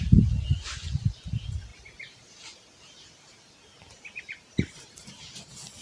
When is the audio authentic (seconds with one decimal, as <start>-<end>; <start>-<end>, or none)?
0.0-1.7; 5.2-5.8